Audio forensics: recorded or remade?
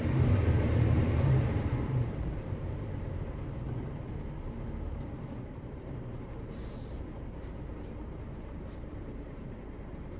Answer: remade